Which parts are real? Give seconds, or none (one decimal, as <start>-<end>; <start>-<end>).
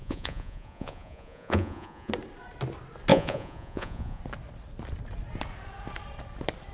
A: 2.1-3.1; 4.2-6.7